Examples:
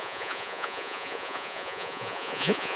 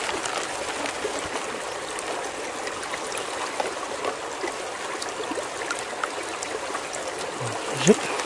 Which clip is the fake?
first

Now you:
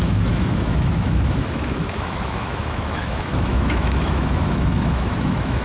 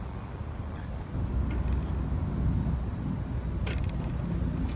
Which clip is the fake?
first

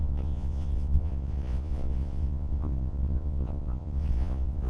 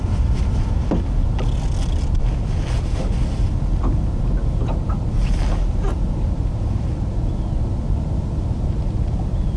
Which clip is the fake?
first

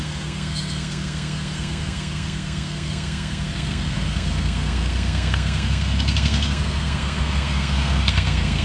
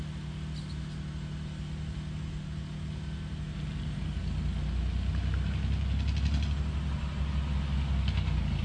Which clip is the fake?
first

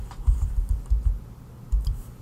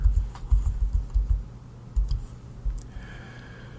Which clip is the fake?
first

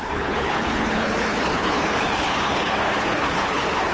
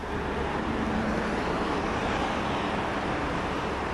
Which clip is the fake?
first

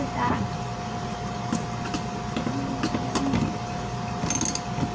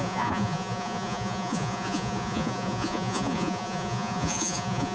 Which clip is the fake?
second